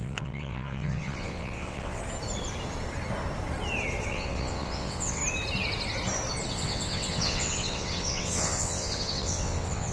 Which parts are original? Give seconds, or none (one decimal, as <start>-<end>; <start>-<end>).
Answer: 2.0-4.1; 5.2-6.5